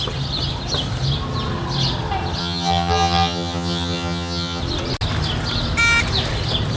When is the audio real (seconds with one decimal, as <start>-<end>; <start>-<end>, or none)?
0.0-2.4; 4.6-6.8